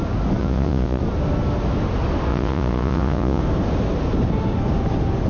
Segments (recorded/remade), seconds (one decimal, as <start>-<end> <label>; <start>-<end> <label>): 0.0-0.4 recorded; 0.4-1.0 remade; 1.0-2.3 recorded; 2.3-3.4 remade; 3.4-5.3 recorded